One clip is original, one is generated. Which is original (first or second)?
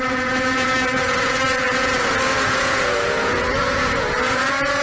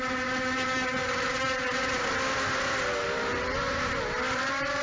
second